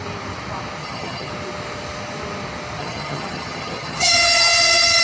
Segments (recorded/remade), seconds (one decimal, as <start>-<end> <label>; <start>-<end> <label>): 0.0-0.8 recorded; 0.8-1.3 remade; 1.3-2.8 recorded; 2.8-5.0 remade